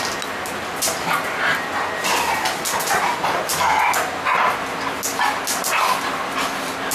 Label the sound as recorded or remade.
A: recorded